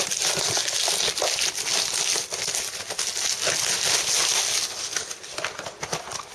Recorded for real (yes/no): yes